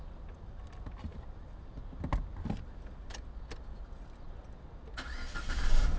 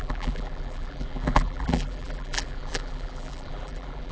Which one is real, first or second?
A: first